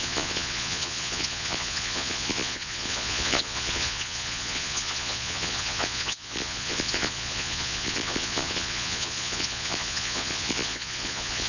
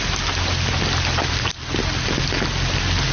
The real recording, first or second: second